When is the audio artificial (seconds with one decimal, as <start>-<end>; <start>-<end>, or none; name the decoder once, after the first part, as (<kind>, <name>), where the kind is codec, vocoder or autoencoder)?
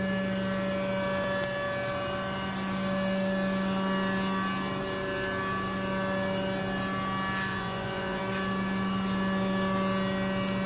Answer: 7.5-8.2 (vocoder, Vocos)